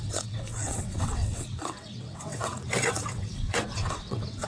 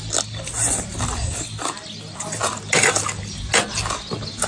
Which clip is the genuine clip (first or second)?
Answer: second